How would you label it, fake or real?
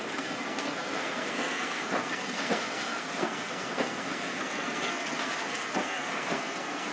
fake